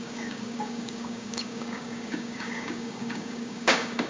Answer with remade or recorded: remade